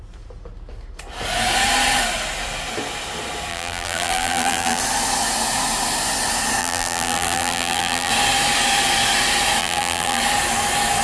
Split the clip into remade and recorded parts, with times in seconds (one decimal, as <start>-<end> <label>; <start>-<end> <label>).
0.0-3.5 recorded; 3.5-4.8 remade; 4.8-6.6 recorded; 6.6-8.1 remade; 8.1-9.6 recorded; 9.6-10.2 remade; 10.2-11.0 recorded